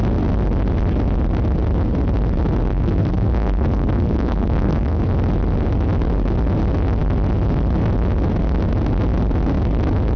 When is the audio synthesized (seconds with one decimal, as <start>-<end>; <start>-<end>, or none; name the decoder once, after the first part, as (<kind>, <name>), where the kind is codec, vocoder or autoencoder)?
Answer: 2.7-5.0 (codec, SNAC)